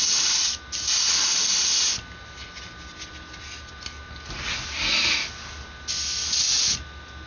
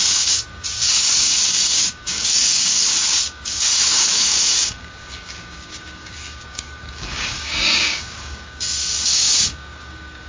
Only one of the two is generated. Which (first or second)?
second